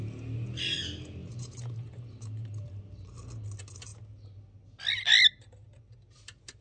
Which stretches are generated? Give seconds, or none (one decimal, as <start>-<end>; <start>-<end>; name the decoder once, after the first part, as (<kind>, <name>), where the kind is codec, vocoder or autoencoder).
1.2-2.7 (vocoder, BigVGAN v2)